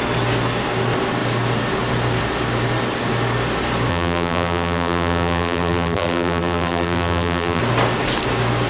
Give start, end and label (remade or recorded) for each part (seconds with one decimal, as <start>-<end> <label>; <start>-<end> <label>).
0.0-3.9 recorded; 3.9-7.6 remade; 7.6-8.7 recorded